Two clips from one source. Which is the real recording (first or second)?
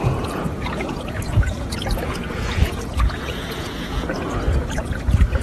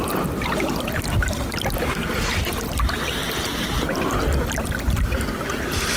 second